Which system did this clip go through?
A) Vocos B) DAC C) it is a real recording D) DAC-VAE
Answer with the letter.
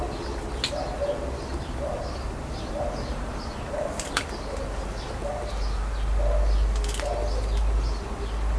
C